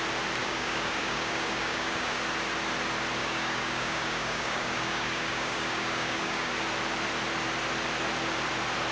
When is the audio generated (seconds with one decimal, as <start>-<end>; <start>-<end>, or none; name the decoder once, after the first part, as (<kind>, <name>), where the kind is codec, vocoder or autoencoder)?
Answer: 0.4-2.2 (codec, DAC); 3.2-6.5